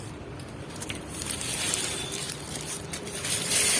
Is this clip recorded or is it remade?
remade